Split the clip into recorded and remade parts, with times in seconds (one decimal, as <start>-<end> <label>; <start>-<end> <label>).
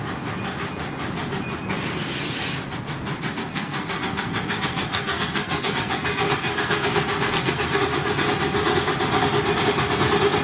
0.0-3.4 recorded; 3.4-7.8 remade; 7.8-10.4 recorded